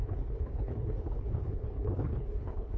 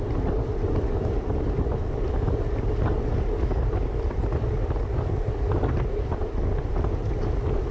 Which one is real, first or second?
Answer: second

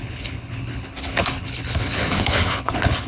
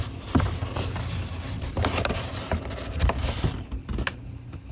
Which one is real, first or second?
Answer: second